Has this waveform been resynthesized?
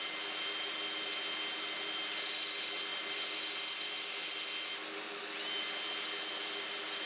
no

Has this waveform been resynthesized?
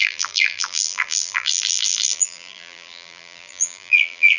yes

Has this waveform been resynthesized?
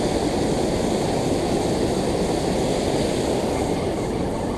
no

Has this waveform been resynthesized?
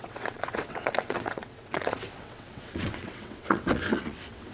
yes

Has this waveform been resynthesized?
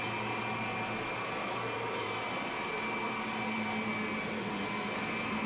no